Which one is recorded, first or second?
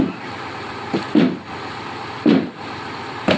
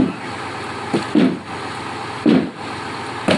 second